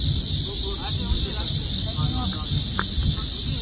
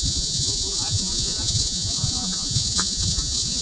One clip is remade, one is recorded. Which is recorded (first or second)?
first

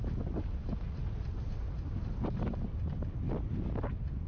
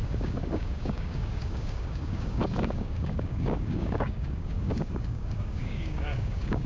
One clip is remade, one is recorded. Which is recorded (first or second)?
first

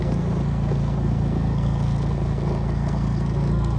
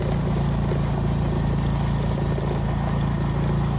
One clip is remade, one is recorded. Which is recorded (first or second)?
second